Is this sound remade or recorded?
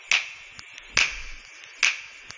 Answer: recorded